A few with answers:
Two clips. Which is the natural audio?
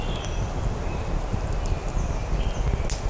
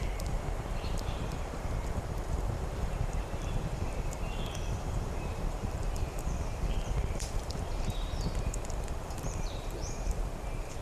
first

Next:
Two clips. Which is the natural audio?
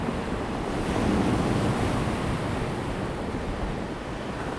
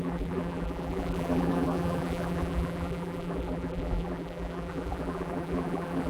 first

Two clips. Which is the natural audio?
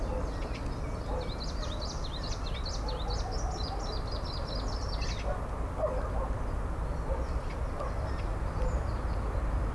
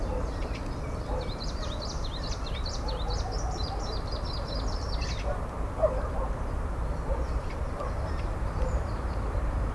first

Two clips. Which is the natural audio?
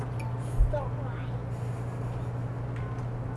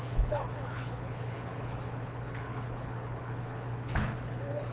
first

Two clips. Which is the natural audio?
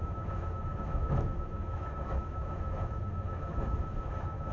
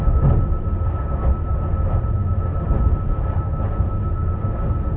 second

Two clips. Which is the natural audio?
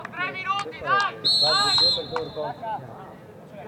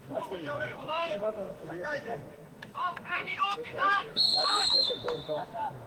first